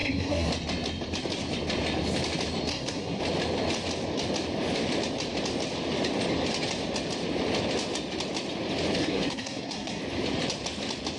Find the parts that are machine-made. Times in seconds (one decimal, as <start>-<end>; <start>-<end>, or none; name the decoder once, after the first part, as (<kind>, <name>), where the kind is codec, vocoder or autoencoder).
0.0-0.5 (codec, SNAC); 2.7-3.2; 9.0-10.0